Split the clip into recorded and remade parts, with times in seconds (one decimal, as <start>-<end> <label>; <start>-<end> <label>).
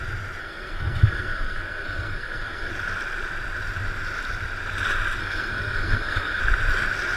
0.0-0.4 recorded; 0.4-2.7 remade; 2.7-5.2 recorded; 5.2-6.4 remade; 6.4-7.2 recorded